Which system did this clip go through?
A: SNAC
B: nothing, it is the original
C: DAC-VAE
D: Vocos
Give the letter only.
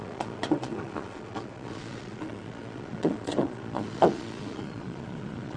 D